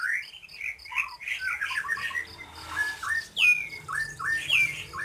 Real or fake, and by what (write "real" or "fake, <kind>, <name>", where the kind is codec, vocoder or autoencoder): real